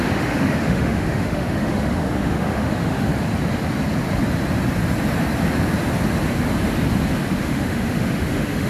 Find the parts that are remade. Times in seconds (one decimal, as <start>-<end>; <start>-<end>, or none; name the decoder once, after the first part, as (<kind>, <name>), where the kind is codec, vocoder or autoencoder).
0.0-3.1 (autoencoder, DAC-VAE); 7.4-8.7